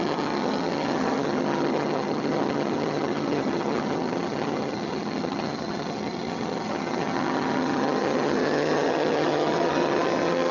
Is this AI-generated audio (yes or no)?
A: yes